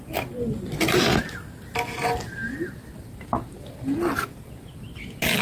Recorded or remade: recorded